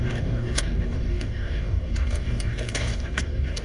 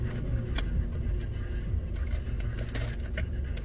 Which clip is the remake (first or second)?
first